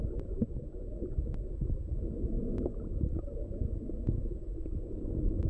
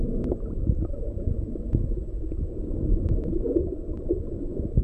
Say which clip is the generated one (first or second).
second